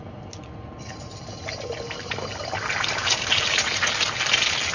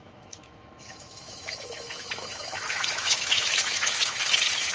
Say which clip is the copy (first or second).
second